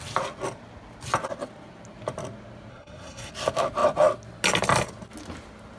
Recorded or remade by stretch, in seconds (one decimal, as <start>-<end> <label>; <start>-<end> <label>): 0.0-2.7 recorded; 2.7-3.3 remade; 3.3-5.8 recorded